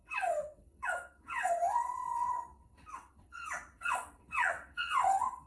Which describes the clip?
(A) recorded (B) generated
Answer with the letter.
B